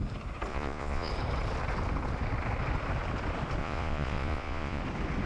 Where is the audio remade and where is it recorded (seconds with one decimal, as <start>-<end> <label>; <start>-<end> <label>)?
0.0-0.5 recorded; 0.5-1.1 remade; 1.1-3.6 recorded; 3.6-4.8 remade; 4.8-5.3 recorded